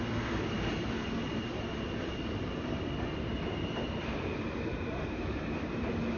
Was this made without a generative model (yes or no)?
no